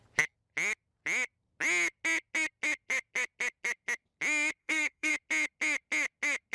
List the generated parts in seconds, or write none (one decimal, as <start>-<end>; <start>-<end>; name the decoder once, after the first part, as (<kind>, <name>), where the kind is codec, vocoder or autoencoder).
4.6-5.1 (codec, SNAC)